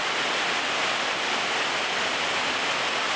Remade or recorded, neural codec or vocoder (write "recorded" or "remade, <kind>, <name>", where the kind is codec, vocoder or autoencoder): recorded